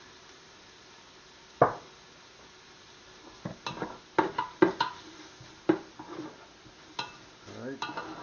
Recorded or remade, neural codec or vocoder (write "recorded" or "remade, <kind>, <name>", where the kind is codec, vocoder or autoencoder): recorded